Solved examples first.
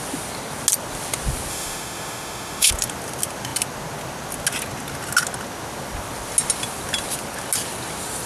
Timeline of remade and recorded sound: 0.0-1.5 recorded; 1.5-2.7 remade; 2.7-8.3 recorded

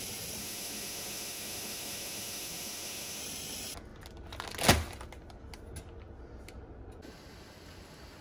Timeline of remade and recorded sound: 0.0-0.4 recorded; 0.4-3.2 remade; 3.2-8.2 recorded

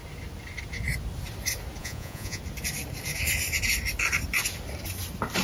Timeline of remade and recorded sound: 0.0-1.8 recorded; 1.8-2.4 remade; 2.4-5.4 recorded